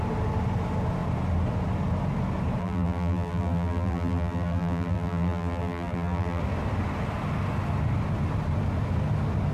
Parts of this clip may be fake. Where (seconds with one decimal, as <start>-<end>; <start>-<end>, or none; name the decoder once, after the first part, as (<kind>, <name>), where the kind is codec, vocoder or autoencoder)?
2.6-6.4 (vocoder, BigVGAN v2)